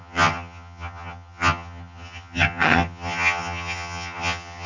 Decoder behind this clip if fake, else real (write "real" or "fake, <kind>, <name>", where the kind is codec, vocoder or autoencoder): fake, vocoder, HiFi-GAN